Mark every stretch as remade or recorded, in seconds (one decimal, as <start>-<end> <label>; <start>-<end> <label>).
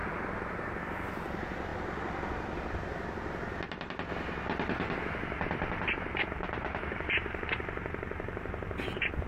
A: 0.0-0.8 recorded; 0.8-1.7 remade; 1.7-5.4 recorded; 5.4-9.3 remade